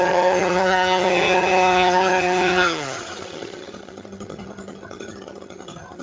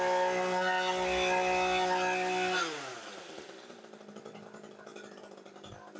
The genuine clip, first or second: second